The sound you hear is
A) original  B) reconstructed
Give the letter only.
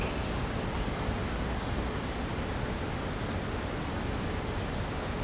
A